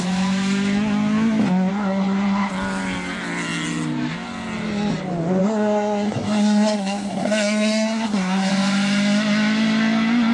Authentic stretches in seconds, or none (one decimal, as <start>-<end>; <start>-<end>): 0.0-1.7; 2.5-5.4; 8.5-10.3

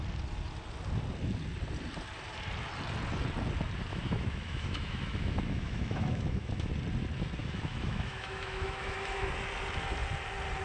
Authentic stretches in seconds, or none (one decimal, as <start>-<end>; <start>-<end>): 0.0-3.9; 6.7-7.4; 9.3-10.6

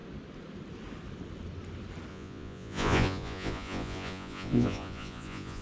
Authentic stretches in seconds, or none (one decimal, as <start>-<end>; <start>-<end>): 0.0-2.1